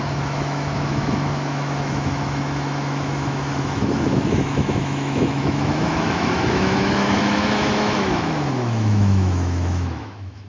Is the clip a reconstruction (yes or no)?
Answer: yes